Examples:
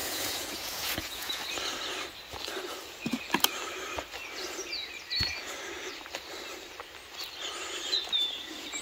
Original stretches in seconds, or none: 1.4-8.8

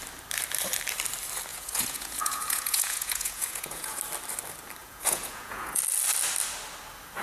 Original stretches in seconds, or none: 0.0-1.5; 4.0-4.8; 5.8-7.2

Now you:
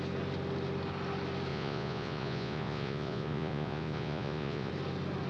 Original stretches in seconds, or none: 0.0-1.5; 4.7-5.3